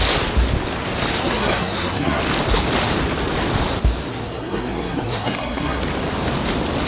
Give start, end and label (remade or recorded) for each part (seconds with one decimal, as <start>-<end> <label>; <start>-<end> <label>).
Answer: 0.0-1.2 recorded; 1.2-2.2 remade; 2.2-4.1 recorded; 4.1-5.8 remade; 5.8-6.9 recorded